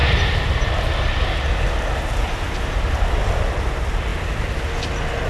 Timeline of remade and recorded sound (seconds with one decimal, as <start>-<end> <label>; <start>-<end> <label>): 0.0-5.3 recorded

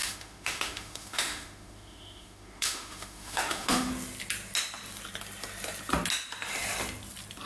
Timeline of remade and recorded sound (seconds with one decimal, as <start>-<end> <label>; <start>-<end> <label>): 0.0-3.9 remade; 3.9-7.5 recorded

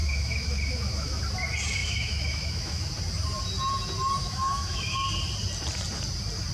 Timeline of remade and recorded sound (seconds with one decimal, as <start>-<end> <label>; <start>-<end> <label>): 0.0-1.2 remade; 1.2-1.8 recorded; 1.8-2.9 remade; 2.9-4.2 recorded; 4.2-4.9 remade; 4.9-6.5 recorded

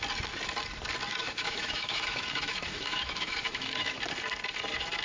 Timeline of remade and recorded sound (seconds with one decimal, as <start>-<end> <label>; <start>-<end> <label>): 0.0-1.2 recorded; 1.2-4.0 remade; 4.0-5.0 recorded